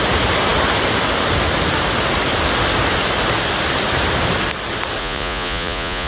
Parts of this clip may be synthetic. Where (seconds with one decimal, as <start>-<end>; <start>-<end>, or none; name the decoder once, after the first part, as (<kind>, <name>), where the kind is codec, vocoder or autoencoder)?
5.0-6.1 (vocoder, Vocos)